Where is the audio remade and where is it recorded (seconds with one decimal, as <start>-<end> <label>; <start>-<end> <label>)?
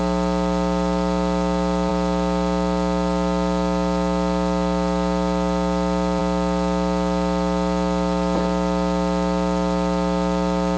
0.0-10.8 recorded